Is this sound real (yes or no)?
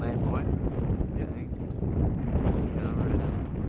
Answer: yes